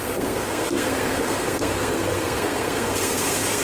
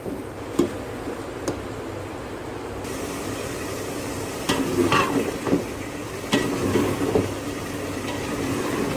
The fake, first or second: first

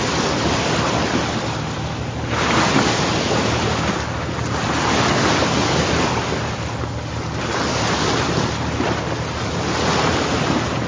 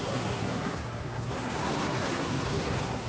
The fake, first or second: second